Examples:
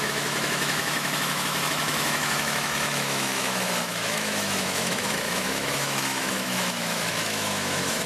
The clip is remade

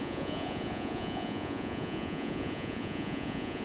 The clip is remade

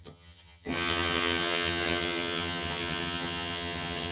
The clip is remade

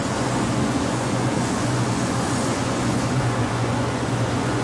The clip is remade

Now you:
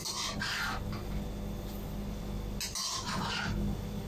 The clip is recorded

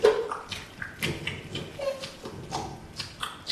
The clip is recorded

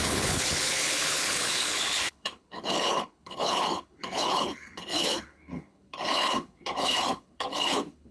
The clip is remade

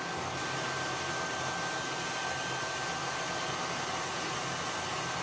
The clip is recorded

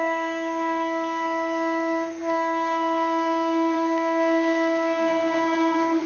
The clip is remade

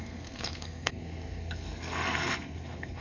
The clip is remade